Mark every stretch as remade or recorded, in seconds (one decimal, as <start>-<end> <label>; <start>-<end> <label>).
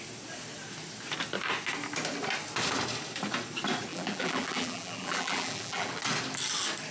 0.0-3.9 recorded; 3.9-6.0 remade; 6.0-6.9 recorded